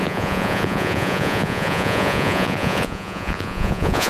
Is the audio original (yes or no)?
no